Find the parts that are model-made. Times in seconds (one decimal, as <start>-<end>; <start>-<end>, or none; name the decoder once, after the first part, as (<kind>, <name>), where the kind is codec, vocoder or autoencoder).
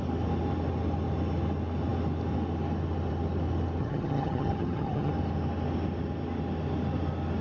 3.8-5.1 (vocoder, HiFi-GAN)